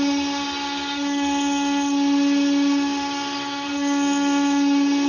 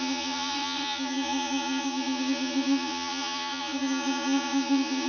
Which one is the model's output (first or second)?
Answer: second